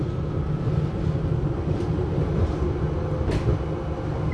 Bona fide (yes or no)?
yes